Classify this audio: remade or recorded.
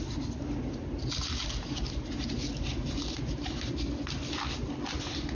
recorded